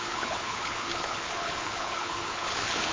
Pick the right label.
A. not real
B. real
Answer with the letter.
A